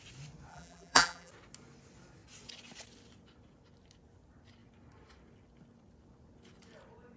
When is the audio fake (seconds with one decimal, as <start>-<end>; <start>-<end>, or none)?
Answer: 0.5-1.3